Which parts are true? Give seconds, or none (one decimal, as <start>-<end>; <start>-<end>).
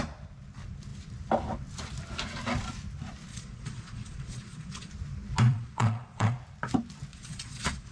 0.0-3.3; 4.9-5.5; 6.3-7.1